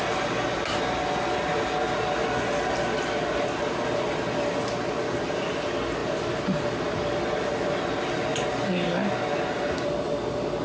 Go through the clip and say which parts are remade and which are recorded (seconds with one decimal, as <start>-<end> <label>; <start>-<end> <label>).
0.0-10.6 recorded

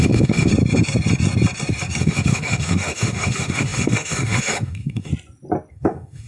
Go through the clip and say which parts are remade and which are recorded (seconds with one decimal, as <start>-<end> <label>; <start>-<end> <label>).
0.0-0.5 remade; 0.5-2.0 recorded; 2.0-5.1 remade; 5.1-5.7 recorded; 5.7-6.3 remade

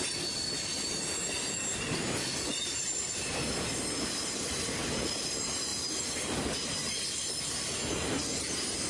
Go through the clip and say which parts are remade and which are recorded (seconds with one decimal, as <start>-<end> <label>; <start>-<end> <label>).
0.0-5.7 recorded; 5.7-7.4 remade; 7.4-8.9 recorded

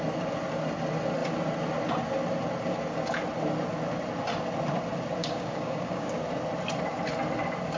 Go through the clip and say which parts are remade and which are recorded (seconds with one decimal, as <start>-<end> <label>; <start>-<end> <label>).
0.0-5.2 recorded; 5.2-6.1 remade; 6.1-7.8 recorded